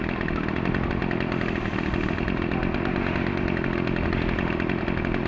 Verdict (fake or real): real